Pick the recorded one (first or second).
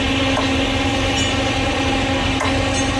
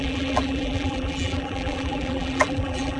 first